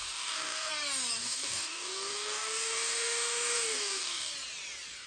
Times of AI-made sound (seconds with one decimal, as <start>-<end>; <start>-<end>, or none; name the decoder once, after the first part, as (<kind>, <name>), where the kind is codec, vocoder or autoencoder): 0.0-0.7 (codec, DAC); 1.2-4.3